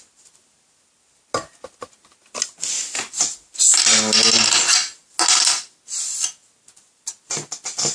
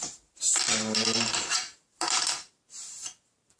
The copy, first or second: second